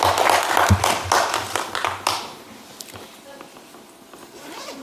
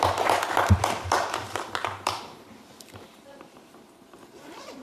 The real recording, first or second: first